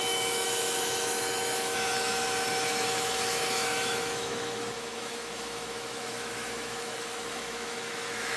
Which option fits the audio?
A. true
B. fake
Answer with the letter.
B